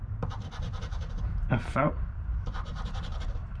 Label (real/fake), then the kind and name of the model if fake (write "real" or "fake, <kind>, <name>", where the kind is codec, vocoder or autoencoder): fake, vocoder, BigVGAN v2